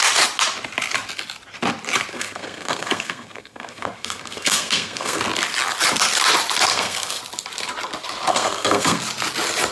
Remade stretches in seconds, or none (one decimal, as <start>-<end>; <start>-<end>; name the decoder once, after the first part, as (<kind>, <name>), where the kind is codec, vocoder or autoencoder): 2.1-5.2 (codec, SNAC); 6.7-7.2; 8.3-9.0